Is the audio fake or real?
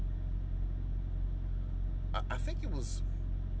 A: real